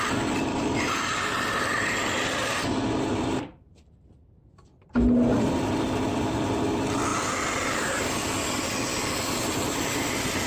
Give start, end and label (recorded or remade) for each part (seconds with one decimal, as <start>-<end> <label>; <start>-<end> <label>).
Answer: 0.0-10.5 recorded